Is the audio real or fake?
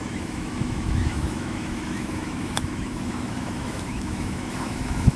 fake